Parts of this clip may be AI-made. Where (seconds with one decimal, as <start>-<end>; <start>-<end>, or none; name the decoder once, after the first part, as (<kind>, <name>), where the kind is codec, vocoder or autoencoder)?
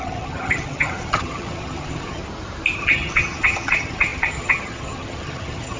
0.0-2.2 (vocoder, HiFi-GAN); 2.8-5.8